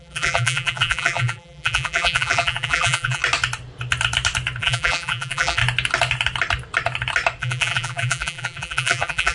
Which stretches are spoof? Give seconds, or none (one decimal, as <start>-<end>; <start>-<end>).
0.0-3.2; 4.6-5.6; 7.4-9.3